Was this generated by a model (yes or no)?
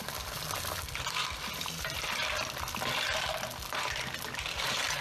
no